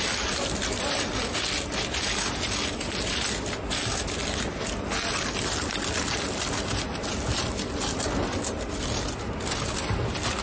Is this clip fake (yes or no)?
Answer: no